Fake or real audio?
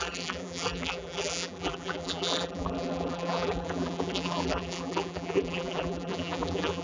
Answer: fake